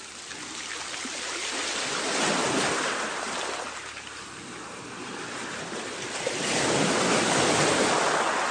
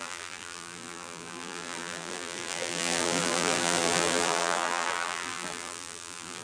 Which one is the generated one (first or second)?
second